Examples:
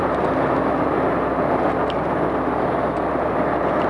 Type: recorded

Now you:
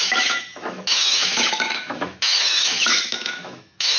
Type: remade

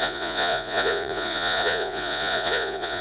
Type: remade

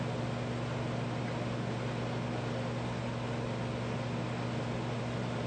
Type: recorded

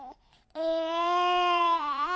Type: remade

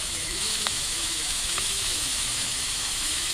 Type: remade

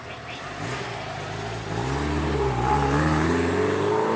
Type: recorded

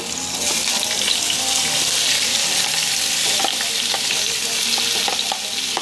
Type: recorded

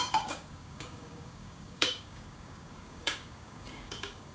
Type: remade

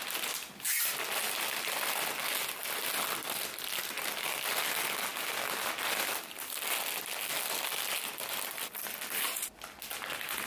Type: recorded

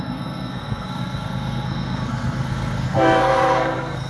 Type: remade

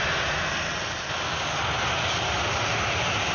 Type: recorded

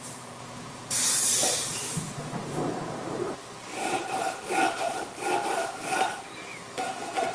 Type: remade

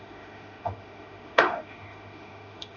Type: remade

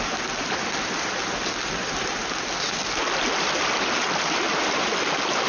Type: recorded